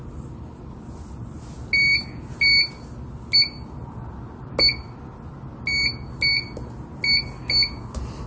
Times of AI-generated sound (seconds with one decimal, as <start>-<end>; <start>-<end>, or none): none